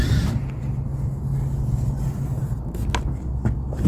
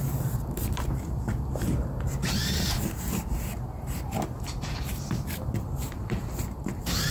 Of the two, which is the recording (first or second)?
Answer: first